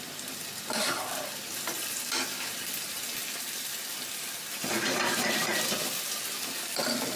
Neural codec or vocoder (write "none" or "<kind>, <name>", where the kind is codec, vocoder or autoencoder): none